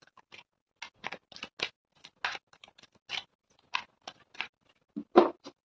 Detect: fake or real real